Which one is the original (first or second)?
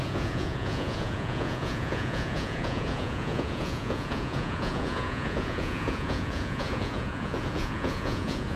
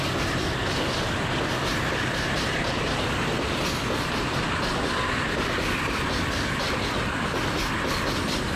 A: second